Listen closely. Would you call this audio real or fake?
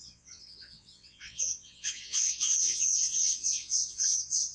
fake